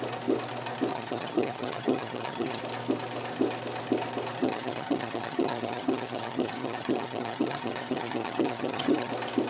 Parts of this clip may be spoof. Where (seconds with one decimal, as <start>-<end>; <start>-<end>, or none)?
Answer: 0.9-2.6; 4.4-9.1